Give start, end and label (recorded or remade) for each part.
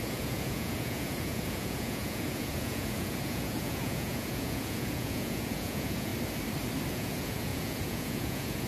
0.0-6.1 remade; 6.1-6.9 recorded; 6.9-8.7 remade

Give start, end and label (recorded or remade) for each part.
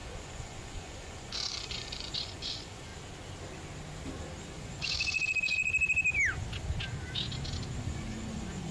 0.0-2.9 remade; 2.9-4.5 recorded; 4.5-5.7 remade; 5.7-7.8 recorded; 7.8-8.7 remade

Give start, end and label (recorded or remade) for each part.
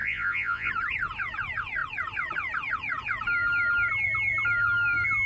0.0-0.7 remade; 0.7-5.3 recorded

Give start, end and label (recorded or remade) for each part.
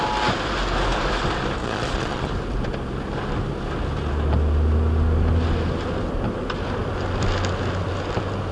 0.0-1.6 recorded; 1.6-2.3 remade; 2.3-8.5 recorded